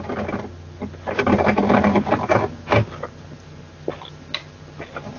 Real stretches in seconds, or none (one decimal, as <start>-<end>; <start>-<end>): 0.0-5.2